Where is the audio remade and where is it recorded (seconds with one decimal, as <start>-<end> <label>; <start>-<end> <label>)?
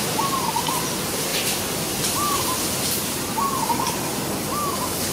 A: 0.0-5.1 recorded